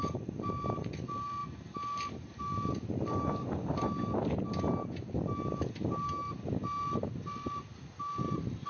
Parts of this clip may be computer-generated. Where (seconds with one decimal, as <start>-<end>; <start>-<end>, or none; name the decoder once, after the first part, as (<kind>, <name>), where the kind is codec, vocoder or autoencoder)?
none